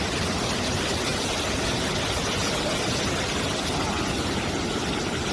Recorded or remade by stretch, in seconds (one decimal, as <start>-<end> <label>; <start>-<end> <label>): 0.0-5.3 recorded